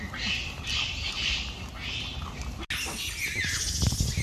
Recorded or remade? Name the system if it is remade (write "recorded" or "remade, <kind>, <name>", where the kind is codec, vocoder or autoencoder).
recorded